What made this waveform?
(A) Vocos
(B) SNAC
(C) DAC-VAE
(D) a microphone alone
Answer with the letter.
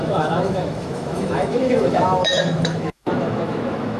C